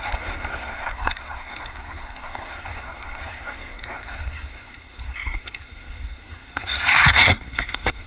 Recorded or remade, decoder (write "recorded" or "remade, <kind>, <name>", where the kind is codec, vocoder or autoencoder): remade, codec, SNAC